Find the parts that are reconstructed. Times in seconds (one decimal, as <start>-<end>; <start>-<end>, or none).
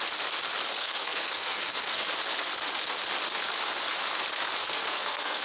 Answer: 0.8-2.1; 4.6-5.4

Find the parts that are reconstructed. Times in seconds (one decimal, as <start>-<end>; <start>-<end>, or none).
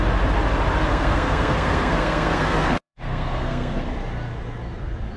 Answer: 0.9-3.9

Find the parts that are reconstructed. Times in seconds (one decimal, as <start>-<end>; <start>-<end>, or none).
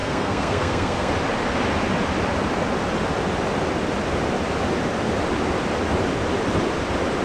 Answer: 0.0-1.1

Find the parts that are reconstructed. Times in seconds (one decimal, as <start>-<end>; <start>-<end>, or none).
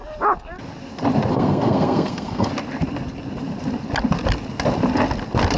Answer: 1.3-2.5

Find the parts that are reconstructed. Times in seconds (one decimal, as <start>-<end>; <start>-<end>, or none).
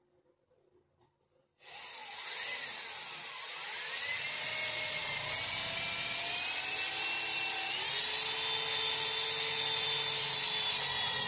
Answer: none